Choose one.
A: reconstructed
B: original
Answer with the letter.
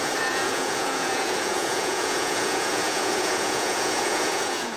A